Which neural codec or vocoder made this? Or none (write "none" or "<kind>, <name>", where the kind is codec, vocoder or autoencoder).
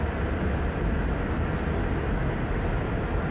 none